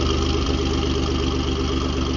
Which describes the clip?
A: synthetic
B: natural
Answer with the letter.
B